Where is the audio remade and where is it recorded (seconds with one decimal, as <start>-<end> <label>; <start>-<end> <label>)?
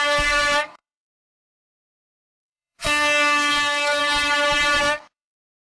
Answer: 0.0-4.0 remade; 4.0-4.8 recorded; 4.8-5.7 remade